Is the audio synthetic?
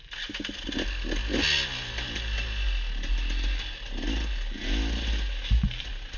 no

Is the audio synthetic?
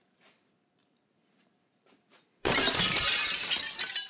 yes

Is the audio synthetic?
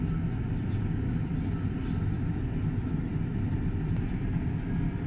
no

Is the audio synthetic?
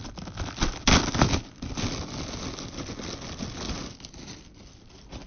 no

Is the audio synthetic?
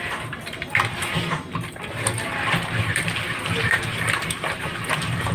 no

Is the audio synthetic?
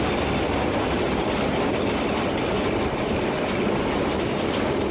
no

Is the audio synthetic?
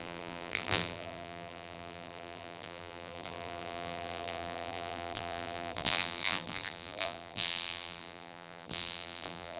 yes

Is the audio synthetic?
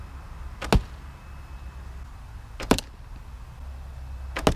no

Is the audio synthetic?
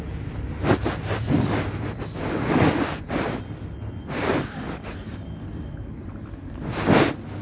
yes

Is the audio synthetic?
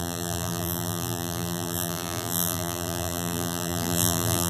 yes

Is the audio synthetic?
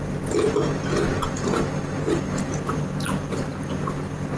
no